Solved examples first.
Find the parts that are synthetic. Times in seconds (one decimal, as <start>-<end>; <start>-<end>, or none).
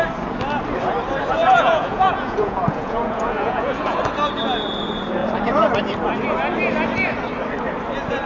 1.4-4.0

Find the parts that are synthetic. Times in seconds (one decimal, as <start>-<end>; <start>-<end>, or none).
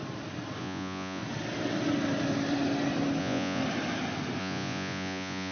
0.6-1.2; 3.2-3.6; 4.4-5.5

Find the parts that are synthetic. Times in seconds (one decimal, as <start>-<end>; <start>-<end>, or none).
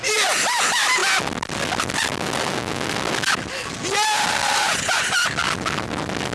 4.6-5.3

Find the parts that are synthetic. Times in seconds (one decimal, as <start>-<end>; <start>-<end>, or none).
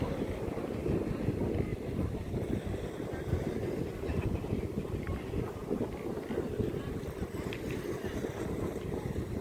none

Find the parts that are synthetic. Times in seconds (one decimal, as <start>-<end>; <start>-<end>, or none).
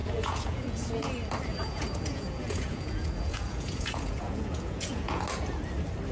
0.0-1.1; 1.5-5.2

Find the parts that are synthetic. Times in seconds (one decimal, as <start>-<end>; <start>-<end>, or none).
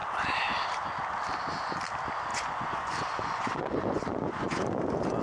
2.3-4.8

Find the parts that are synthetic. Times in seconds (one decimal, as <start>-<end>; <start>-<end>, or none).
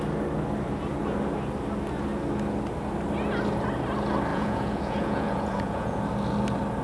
4.3-6.0